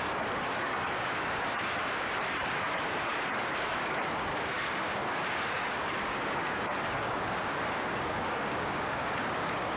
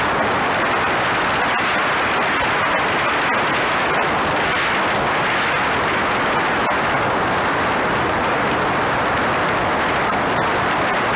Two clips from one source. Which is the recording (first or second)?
second